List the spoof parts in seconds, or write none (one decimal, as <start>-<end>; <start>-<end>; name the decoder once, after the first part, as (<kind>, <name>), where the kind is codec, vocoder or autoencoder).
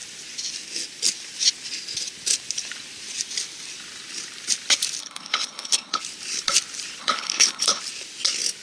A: 5.0-6.0 (codec, HILCodec); 7.0-7.8